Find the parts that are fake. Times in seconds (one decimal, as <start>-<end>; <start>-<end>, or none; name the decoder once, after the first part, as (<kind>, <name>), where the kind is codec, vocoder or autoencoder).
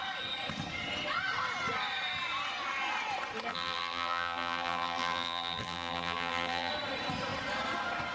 3.5-6.7 (vocoder, BigVGAN v2)